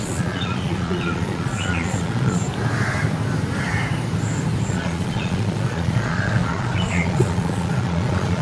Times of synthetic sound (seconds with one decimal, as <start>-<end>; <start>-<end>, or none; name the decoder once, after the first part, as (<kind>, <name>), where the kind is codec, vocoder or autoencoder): 0.0-2.4 (vocoder, Vocos); 4.7-8.4